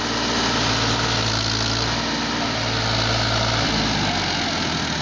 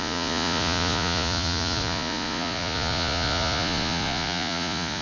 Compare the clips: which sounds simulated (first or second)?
second